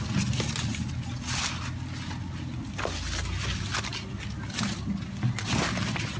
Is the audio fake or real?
real